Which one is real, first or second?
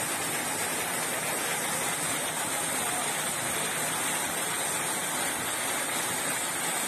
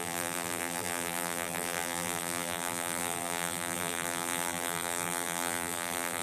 first